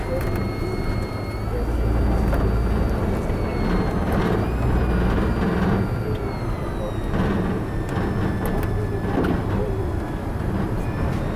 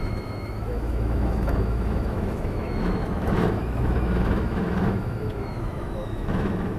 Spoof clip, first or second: second